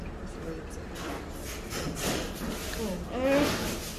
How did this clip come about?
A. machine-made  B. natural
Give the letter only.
B